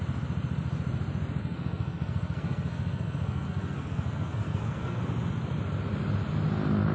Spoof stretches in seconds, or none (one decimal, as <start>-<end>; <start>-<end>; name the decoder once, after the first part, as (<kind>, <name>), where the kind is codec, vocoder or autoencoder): 1.4-5.0 (codec, SNAC)